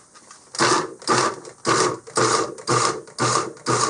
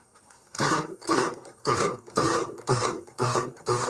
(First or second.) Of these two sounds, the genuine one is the first